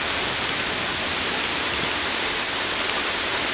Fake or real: real